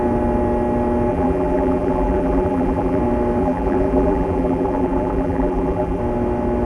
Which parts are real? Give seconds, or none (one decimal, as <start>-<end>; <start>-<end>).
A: 0.0-1.1; 3.0-3.4; 6.0-6.7